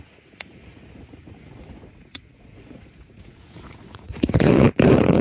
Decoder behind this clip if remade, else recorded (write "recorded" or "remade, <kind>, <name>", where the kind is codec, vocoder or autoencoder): remade, vocoder, Vocos